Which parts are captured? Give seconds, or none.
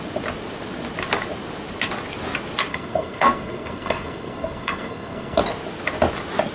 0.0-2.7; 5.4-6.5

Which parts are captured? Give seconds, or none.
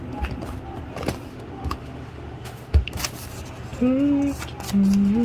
0.0-1.3; 3.0-5.2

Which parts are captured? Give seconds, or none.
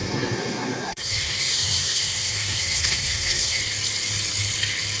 3.6-5.0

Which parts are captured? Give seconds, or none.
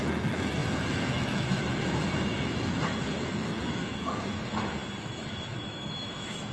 none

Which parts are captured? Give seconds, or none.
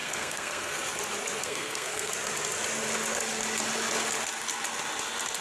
0.8-1.4; 2.1-5.4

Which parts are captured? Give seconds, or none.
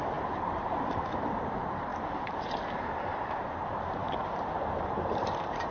none